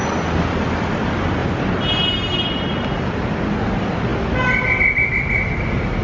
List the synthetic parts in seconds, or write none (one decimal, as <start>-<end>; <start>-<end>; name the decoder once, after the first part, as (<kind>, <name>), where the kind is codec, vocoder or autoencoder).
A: none